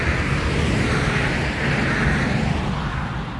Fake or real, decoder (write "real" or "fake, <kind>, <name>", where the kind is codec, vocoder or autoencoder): real